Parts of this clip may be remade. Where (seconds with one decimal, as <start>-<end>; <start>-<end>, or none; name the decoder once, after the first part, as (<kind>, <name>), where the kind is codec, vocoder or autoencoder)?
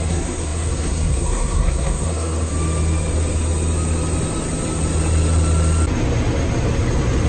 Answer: 0.0-2.5 (codec, SNAC)